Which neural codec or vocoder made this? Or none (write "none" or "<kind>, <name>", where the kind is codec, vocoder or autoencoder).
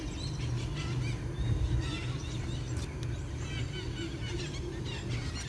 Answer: none